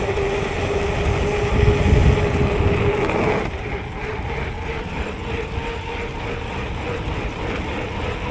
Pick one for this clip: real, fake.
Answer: real